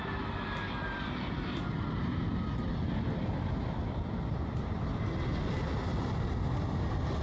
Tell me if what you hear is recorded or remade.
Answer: recorded